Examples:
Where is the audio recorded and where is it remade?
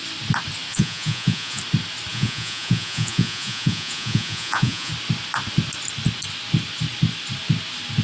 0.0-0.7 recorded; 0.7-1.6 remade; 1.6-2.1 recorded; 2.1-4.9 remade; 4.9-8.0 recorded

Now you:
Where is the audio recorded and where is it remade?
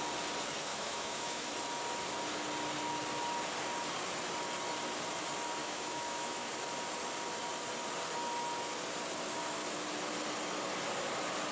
0.0-0.7 recorded; 0.7-1.4 remade; 1.4-5.6 recorded; 5.6-6.5 remade; 6.5-11.5 recorded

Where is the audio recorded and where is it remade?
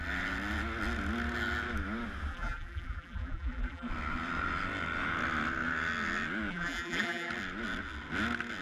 0.0-2.3 recorded; 2.3-3.9 remade; 3.9-6.5 recorded; 6.5-7.3 remade; 7.3-8.6 recorded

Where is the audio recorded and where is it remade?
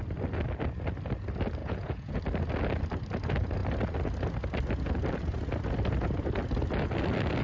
0.0-1.6 recorded; 1.6-2.2 remade; 2.2-7.4 recorded